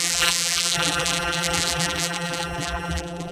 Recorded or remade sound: remade